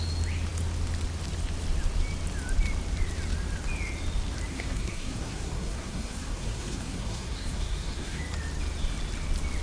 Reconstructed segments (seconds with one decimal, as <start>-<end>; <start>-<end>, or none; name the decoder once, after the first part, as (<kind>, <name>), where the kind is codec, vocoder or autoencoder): 4.5-8.2 (codec, SNAC)